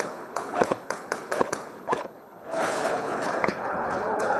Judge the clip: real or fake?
fake